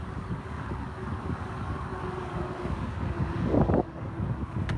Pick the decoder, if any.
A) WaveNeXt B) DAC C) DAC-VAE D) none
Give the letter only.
B